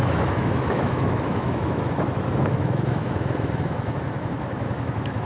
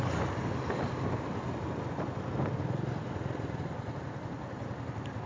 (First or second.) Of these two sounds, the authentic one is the second